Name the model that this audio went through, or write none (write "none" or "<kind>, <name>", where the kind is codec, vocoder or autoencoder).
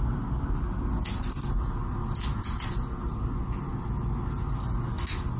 none